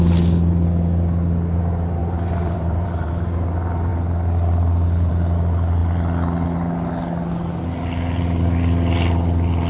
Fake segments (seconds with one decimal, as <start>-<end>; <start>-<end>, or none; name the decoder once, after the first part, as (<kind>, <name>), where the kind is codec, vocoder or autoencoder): 2.0-3.1 (vocoder, BigVGAN v2)

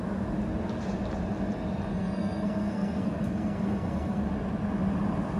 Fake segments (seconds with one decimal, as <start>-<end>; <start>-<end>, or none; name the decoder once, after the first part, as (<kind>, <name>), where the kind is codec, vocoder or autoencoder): 1.9-4.2 (codec, SNAC)

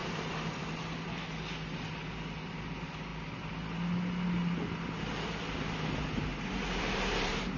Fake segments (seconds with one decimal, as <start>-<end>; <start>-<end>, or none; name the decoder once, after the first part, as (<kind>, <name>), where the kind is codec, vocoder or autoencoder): 0.0-0.6 (vocoder, BigVGAN v2); 6.3-7.6

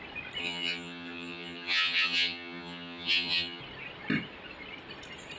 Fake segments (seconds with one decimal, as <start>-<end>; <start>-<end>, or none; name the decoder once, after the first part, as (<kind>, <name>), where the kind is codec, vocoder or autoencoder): 0.4-3.6 (vocoder, HiFi-GAN)

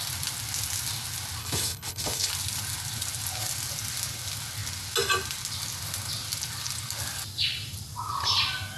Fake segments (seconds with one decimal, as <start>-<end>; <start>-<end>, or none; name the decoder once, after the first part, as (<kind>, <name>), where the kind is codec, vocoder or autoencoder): 1.4-2.3 (codec, HILCodec)

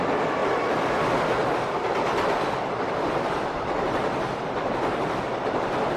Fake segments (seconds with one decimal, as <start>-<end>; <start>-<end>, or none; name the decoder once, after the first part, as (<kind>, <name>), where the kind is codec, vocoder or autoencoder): none